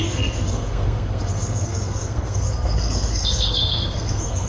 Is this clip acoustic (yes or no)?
no